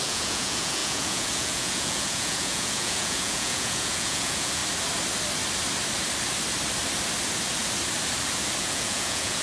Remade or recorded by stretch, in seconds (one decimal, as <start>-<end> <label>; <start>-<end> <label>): 0.0-4.6 remade; 4.6-8.6 recorded; 8.6-9.4 remade